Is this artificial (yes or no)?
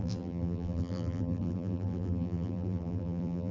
yes